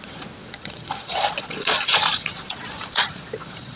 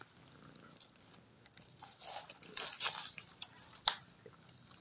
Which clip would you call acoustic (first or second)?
second